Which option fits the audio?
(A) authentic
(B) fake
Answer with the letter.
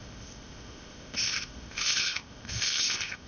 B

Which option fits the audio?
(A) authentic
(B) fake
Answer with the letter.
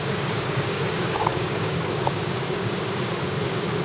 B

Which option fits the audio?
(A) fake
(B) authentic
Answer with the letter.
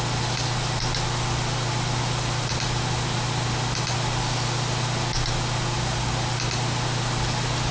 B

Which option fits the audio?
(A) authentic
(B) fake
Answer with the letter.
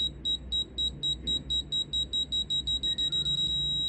A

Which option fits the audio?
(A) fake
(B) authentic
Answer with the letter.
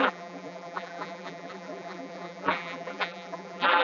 A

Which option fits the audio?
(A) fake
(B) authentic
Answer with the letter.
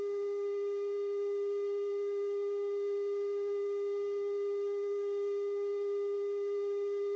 A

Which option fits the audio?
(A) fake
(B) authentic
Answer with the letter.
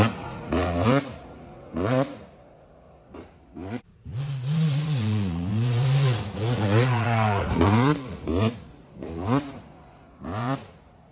A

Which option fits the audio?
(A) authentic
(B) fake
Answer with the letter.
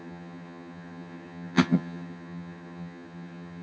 B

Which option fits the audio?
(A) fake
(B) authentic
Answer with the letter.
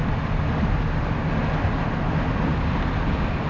B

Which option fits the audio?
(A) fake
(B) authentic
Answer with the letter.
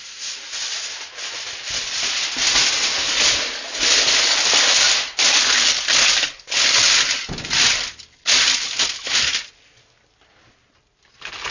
B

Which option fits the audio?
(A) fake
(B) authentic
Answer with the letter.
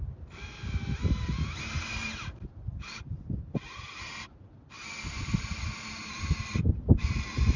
B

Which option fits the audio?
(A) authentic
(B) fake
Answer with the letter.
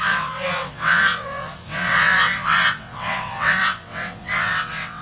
B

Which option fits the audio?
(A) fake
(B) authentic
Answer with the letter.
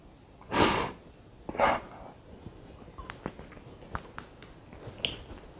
B